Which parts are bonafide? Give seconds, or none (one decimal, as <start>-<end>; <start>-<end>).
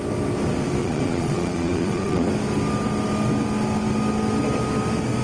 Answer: 0.0-0.8; 2.3-5.2